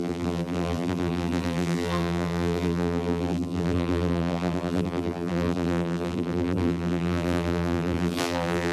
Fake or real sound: fake